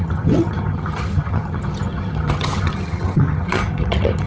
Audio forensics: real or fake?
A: fake